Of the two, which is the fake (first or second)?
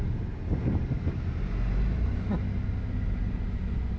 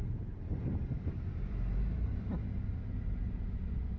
second